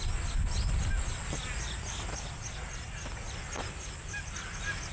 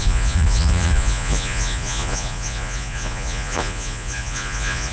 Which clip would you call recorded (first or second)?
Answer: first